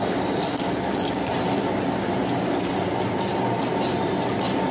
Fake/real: real